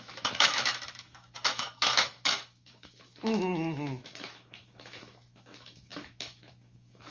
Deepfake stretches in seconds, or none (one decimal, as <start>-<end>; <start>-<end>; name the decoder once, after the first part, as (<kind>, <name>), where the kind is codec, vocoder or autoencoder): 0.0-7.1 (autoencoder, DAC-VAE)